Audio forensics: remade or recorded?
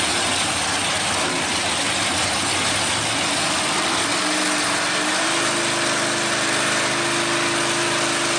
recorded